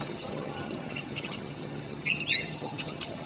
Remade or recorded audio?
remade